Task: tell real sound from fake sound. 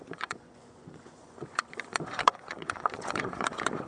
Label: fake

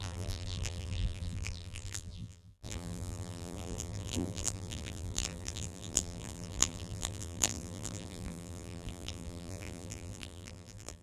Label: fake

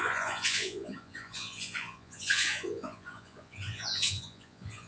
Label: fake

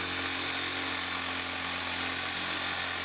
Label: real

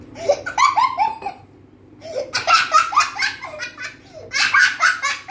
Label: real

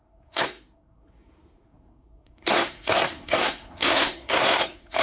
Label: fake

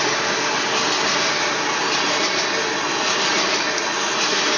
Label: real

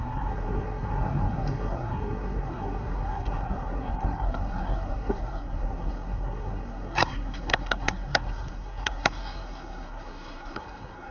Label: fake